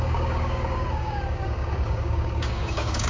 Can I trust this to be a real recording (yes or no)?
no